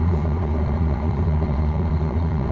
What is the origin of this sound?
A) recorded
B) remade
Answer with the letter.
B